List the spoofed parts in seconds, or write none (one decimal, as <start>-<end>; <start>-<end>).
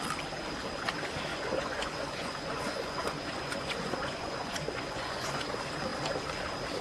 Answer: 1.3-5.4